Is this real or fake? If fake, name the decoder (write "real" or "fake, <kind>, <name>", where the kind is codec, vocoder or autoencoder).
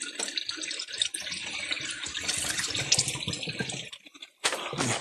real